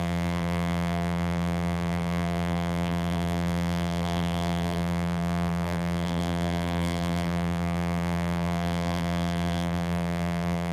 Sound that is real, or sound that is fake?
fake